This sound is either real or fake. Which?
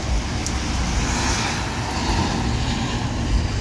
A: real